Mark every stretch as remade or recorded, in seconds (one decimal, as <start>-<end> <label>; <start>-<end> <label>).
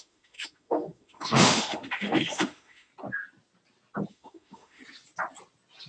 0.0-2.9 remade; 2.9-4.1 recorded; 4.1-4.8 remade; 4.8-5.9 recorded